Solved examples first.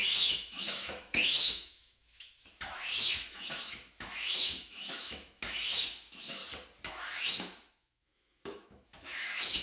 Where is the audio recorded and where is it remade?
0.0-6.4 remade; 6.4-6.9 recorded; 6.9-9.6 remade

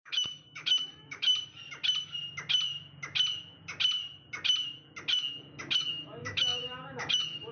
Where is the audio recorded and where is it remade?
0.0-1.3 remade; 1.3-5.8 recorded; 5.8-7.5 remade

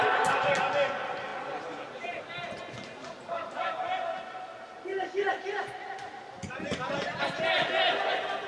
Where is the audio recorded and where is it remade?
0.0-8.5 recorded

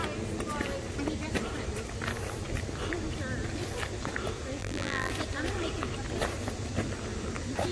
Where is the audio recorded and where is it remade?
0.0-4.6 recorded; 4.6-5.1 remade; 5.1-7.7 recorded

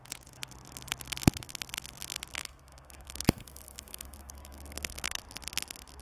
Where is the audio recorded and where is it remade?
0.0-2.3 recorded; 2.3-5.2 remade; 5.2-6.0 recorded